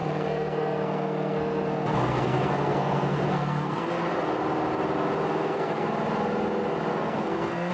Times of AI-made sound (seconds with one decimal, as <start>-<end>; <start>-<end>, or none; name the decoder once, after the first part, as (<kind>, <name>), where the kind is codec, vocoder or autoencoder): 0.0-3.9 (codec, SNAC); 5.3-5.9; 6.9-7.7